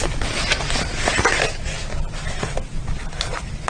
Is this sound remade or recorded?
recorded